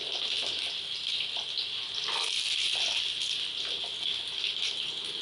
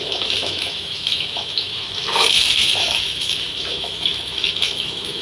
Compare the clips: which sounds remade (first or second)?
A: second